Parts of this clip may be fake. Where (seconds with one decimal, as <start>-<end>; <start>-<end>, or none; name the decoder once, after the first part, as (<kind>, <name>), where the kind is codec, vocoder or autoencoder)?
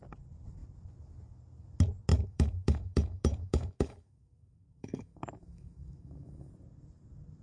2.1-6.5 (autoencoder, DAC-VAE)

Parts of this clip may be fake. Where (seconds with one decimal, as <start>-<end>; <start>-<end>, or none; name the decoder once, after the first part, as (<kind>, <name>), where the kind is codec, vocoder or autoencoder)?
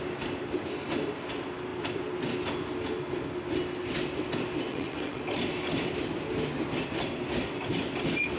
4.7-5.2 (vocoder, WaveNeXt)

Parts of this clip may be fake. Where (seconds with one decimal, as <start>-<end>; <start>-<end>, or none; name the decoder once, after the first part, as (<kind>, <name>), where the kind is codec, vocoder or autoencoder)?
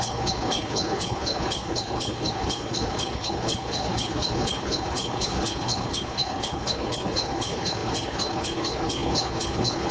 0.0-9.9 (codec, HILCodec)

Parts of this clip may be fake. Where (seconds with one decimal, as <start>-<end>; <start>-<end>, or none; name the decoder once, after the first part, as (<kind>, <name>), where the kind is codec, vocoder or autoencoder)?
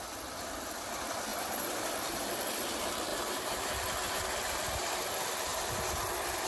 1.3-1.9 (vocoder, BigVGAN v2); 3.1-3.6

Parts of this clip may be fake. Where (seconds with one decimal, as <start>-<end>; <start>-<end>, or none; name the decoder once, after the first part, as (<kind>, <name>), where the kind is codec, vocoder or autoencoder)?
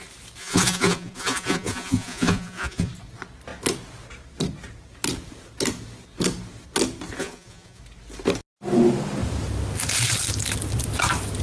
0.4-2.9 (vocoder, Vocos); 7.2-7.8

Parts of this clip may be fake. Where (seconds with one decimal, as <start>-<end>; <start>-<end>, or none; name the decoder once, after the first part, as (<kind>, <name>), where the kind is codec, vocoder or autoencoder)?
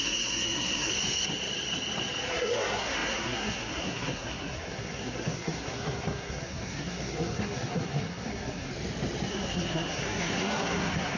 0.0-0.9 (codec, SNAC); 2.3-8.7; 9.3-11.2